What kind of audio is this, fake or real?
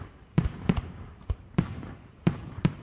fake